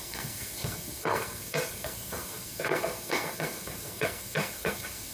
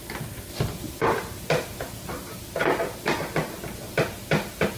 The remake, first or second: first